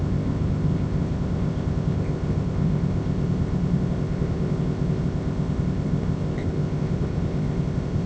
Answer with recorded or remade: remade